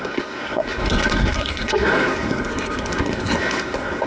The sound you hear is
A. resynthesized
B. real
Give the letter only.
A